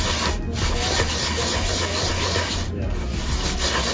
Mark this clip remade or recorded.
recorded